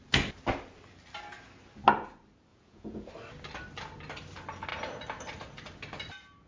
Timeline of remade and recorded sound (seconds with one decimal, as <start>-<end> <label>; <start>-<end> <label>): 0.0-2.5 recorded; 2.5-3.1 remade; 3.1-6.5 recorded